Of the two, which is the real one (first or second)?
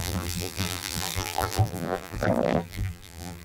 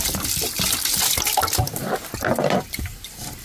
second